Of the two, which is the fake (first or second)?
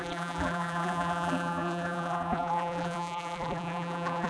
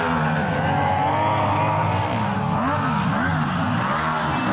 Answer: first